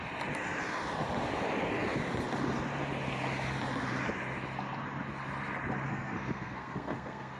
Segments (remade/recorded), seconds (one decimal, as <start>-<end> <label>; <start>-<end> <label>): 0.0-5.9 recorded; 5.9-7.4 remade